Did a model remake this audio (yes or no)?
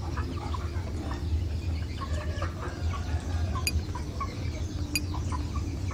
no